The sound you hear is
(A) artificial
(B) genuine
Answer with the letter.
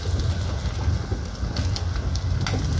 B